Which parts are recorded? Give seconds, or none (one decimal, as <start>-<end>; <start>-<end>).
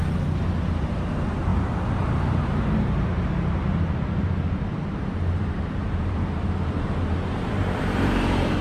1.5-2.7